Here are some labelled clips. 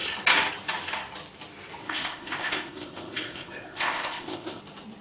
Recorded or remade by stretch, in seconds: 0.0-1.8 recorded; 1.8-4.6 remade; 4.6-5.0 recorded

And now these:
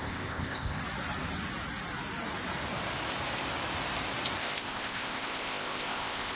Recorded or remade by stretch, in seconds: 0.0-0.8 remade; 0.8-4.4 recorded; 4.4-6.4 remade